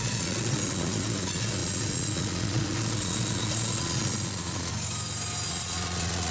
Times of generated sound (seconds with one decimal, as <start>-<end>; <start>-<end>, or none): 0.0-4.7; 5.5-6.3